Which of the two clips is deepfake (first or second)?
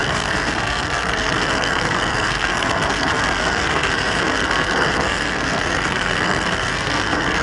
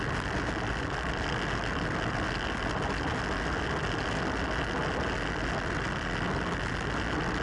first